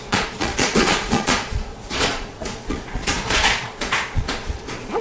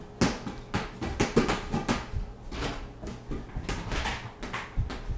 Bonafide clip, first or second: second